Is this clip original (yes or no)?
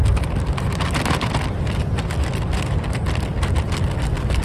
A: yes